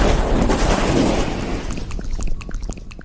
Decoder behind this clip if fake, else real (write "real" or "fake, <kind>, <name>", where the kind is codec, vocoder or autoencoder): fake, vocoder, BigVGAN v2